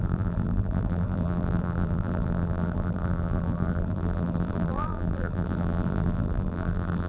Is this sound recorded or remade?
remade